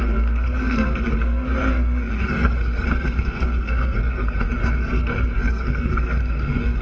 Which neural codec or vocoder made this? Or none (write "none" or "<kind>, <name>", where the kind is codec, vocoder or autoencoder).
codec, SNAC